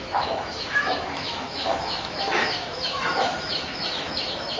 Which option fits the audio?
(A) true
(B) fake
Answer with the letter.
B